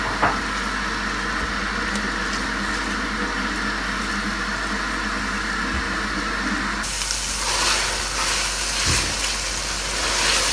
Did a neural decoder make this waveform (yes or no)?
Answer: no